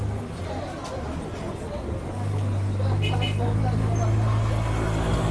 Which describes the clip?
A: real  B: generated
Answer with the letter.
A